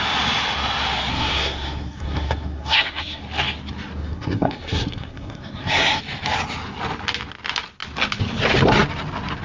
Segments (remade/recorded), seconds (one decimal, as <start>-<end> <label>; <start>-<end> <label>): 0.0-1.1 recorded; 1.1-3.2 remade; 3.2-4.0 recorded; 4.0-6.0 remade; 6.0-9.4 recorded